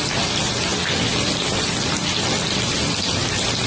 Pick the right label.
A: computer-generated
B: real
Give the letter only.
B